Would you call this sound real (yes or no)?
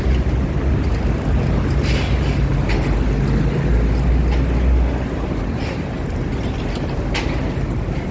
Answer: yes